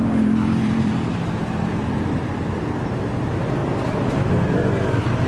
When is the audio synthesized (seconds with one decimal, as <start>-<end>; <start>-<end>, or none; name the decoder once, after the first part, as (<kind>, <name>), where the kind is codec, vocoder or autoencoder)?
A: 0.0-5.3 (vocoder, BigVGAN v2)